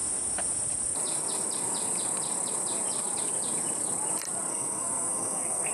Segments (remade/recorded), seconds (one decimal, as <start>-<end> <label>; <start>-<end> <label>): 0.0-4.5 recorded; 4.5-5.7 remade